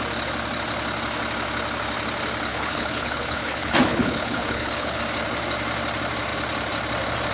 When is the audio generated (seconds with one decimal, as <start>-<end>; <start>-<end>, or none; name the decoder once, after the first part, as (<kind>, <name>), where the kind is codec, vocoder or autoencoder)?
2.5-5.0 (codec, HILCodec)